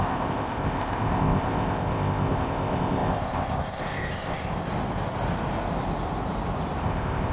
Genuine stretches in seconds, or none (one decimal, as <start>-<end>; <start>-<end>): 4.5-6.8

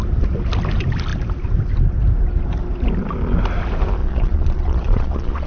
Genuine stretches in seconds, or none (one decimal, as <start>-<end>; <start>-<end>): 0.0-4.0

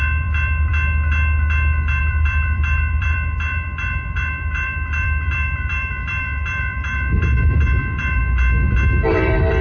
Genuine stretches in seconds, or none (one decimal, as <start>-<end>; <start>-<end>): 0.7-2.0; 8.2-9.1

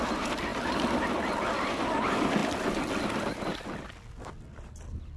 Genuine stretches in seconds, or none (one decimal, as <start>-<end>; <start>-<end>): 0.0-5.2

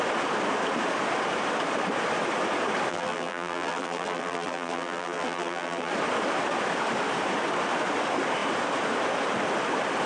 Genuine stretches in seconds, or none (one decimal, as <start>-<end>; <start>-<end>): 0.0-2.9; 5.9-10.1

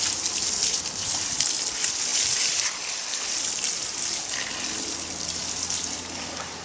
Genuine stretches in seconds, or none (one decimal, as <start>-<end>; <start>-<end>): 0.0-6.6